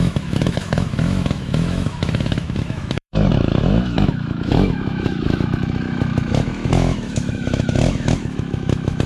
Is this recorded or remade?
remade